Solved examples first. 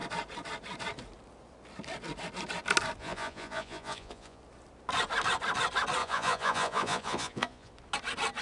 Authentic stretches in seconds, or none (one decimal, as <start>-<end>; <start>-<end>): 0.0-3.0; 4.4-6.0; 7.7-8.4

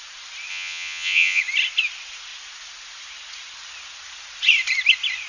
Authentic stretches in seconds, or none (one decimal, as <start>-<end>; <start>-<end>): 0.0-0.5; 1.4-5.3

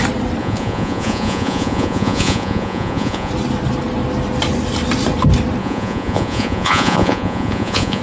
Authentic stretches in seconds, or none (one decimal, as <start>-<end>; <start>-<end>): 0.0-0.4; 3.3-5.6